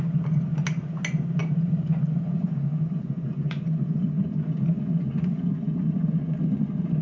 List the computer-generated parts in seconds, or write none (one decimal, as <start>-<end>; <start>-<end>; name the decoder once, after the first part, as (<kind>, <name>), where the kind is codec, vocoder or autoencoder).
2.4-6.6 (vocoder, Vocos)